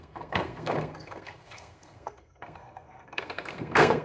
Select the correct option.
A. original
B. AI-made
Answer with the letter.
B